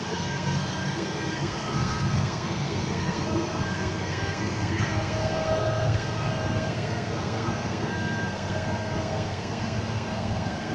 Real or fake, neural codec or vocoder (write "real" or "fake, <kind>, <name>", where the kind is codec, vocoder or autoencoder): fake, codec, SNAC